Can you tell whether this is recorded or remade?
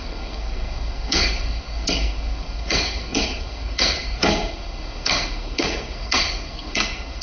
remade